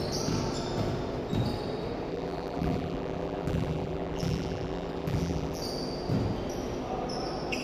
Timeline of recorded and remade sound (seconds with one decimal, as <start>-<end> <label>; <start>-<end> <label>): 0.0-2.1 recorded; 2.1-5.6 remade; 5.6-7.6 recorded